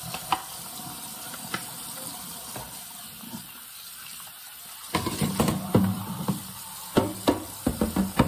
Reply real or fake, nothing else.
real